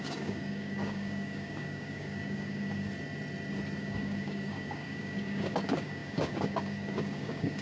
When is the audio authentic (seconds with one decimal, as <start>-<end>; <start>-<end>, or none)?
2.9-3.8